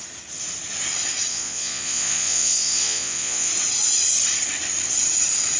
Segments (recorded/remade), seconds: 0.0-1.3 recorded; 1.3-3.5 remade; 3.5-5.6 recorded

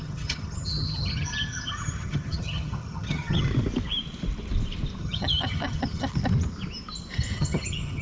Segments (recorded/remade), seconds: 0.0-3.5 remade; 3.5-5.0 recorded; 5.0-6.1 remade; 6.1-7.3 recorded; 7.3-8.0 remade